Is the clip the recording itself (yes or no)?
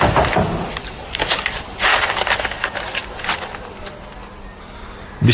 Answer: yes